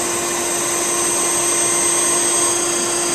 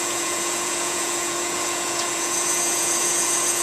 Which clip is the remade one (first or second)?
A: second